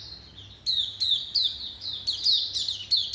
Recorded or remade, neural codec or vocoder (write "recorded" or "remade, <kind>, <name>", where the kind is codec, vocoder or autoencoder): recorded